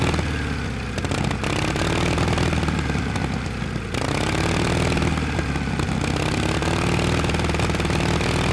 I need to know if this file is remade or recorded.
recorded